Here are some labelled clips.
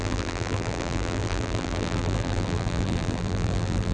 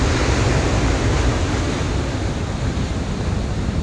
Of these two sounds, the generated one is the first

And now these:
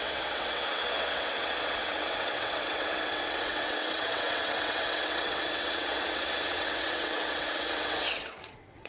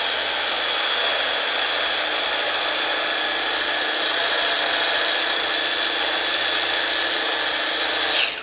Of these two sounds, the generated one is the first